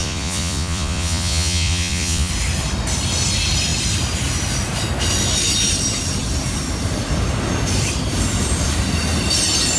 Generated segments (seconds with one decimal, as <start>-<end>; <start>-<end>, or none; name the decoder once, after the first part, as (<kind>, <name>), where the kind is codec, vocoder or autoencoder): 0.0-2.3 (vocoder, Vocos)